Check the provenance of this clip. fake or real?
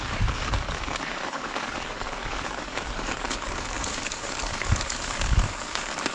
fake